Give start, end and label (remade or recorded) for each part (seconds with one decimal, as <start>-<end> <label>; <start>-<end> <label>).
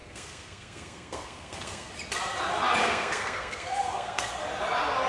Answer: 0.0-1.9 remade; 1.9-2.8 recorded; 2.8-4.3 remade; 4.3-5.1 recorded